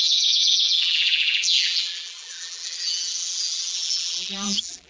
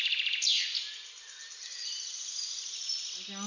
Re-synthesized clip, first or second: first